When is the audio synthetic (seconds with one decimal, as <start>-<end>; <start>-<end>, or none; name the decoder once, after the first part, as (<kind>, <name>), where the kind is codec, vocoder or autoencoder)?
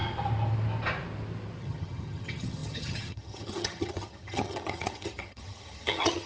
1.6-6.3 (vocoder, HiFi-GAN)